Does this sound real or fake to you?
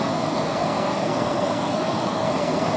fake